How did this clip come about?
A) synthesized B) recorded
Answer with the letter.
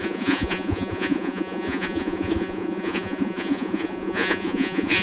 A